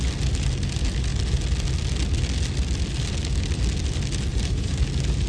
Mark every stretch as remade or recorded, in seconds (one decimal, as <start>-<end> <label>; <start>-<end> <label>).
0.0-4.3 recorded; 4.3-4.8 remade; 4.8-5.3 recorded